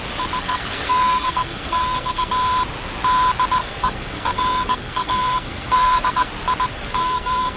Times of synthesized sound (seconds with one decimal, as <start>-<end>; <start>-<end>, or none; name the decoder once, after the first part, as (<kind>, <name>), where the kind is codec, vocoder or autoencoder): 0.4-2.3 (codec, SNAC); 3.6-6.3; 6.7-7.6